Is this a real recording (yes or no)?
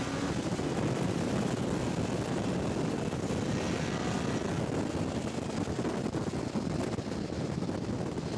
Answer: yes